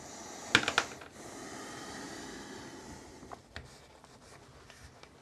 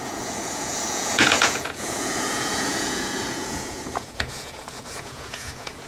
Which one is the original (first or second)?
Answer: first